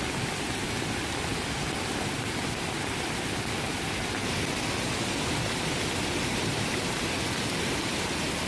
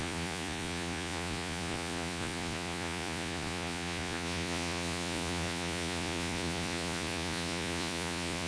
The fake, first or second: second